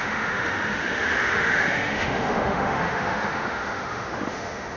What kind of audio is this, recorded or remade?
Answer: remade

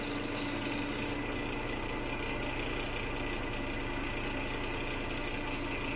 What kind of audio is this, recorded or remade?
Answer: recorded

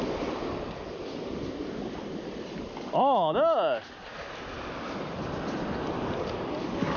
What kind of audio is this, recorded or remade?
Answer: recorded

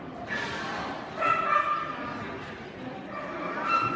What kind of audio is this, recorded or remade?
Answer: recorded